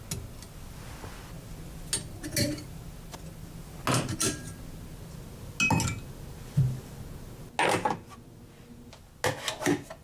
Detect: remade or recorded recorded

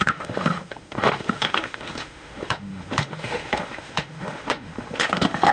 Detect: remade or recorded remade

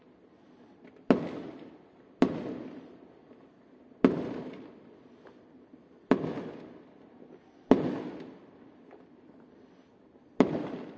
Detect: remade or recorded recorded